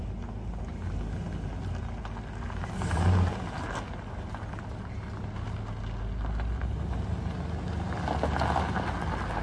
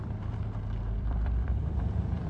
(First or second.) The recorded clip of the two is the first